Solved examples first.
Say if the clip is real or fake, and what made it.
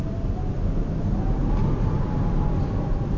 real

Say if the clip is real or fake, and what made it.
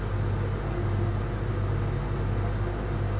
real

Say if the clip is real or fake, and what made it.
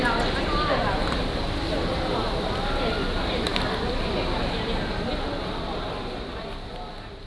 real